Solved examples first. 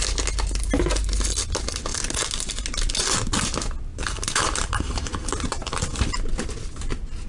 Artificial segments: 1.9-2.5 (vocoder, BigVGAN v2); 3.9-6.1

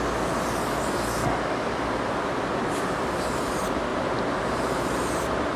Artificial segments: 3.9-5.6 (vocoder, BigVGAN v2)

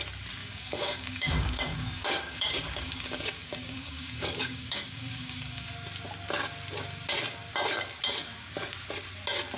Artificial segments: 0.4-5.7 (codec, DAC)

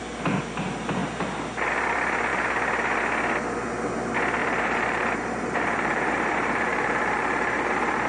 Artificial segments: 4.4-8.1 (vocoder, BigVGAN v2)

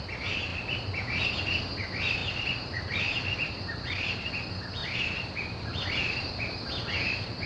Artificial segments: 0.5-1.5 (vocoder, BigVGAN v2); 2.2-4.3; 4.8-6.6

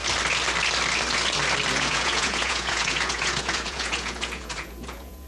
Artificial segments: 1.7-5.3 (vocoder, Vocos)

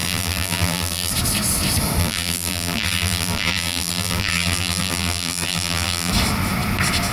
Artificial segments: 0.0-1.1 (vocoder, BigVGAN v2); 2.0-6.1